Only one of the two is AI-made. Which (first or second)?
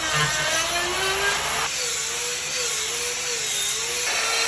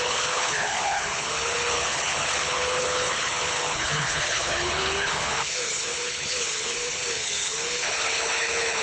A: second